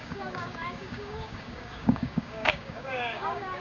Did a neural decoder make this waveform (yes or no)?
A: yes